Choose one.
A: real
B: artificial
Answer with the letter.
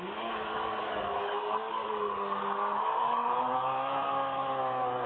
B